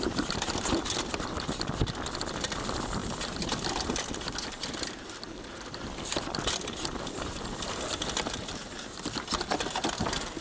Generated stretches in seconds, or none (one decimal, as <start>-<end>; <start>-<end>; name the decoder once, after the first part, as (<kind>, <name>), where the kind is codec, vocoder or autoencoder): none